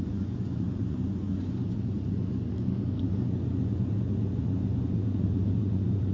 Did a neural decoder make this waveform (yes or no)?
yes